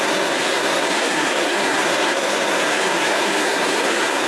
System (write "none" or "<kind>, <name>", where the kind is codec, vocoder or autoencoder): codec, SNAC